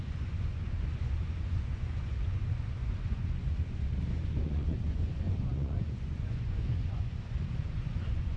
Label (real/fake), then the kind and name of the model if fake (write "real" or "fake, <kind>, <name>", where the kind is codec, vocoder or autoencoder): fake, vocoder, Vocos